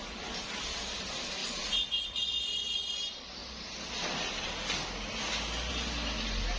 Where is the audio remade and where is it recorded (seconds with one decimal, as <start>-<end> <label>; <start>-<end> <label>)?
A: 0.0-1.4 recorded; 1.4-2.9 remade; 2.9-6.6 recorded